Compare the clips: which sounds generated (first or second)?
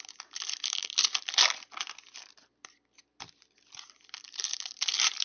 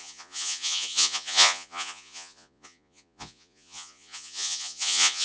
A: second